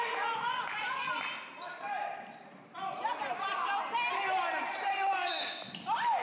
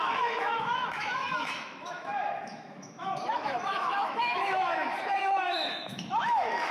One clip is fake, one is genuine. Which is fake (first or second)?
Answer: second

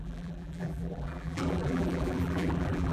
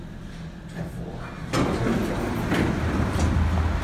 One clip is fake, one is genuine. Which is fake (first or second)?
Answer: first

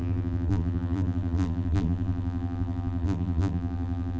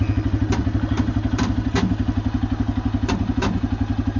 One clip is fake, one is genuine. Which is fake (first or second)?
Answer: first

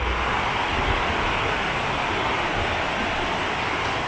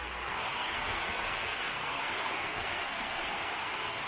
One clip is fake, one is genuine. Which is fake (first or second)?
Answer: second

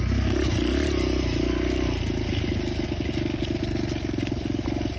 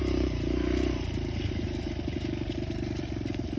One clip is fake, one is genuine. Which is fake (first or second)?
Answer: second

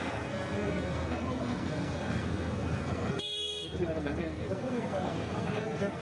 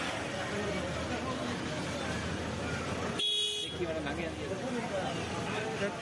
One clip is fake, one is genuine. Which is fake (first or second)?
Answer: first